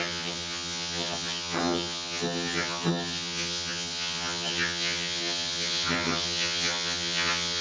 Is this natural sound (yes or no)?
no